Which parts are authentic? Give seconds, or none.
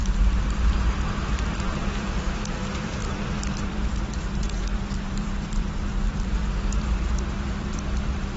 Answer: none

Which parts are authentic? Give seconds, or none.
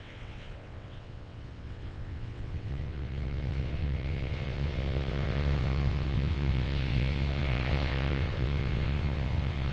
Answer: none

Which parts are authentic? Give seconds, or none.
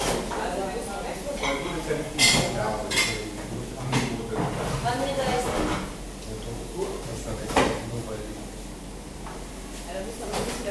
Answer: 0.0-7.1; 8.2-10.7